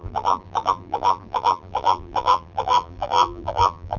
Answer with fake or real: fake